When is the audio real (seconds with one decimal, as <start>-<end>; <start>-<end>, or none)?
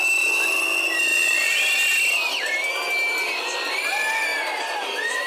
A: 0.0-1.1; 1.6-4.3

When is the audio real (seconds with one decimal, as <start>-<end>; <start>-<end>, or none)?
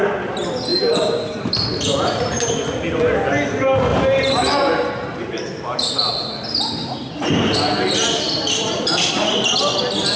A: 0.0-0.7; 2.5-3.9; 4.7-10.2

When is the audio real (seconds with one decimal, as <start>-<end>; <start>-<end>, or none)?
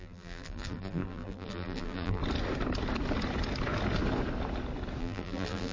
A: 2.2-5.0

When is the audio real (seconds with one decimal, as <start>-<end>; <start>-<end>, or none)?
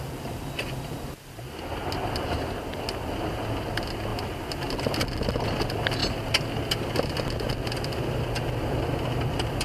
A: 0.0-9.6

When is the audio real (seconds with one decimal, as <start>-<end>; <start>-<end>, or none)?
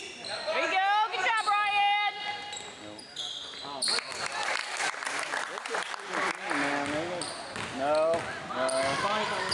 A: 0.0-4.6; 6.3-9.5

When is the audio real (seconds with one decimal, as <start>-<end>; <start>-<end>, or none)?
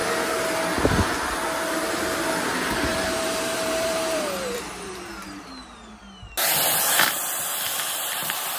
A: 0.0-2.9; 5.5-8.6